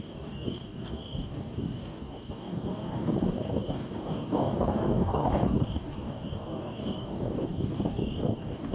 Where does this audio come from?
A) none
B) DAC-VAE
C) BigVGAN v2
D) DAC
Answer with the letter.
D